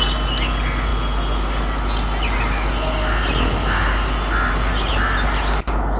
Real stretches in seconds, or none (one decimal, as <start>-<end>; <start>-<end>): 0.0-6.0